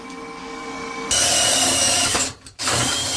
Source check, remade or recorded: remade